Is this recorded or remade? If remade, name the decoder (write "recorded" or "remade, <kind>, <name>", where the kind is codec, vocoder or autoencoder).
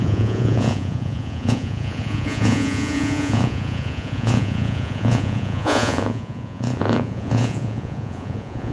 remade, vocoder, Vocos